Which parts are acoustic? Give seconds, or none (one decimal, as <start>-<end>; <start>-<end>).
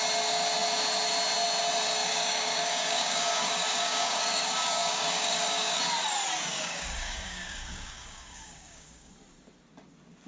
0.0-2.0; 5.8-6.5; 9.1-10.3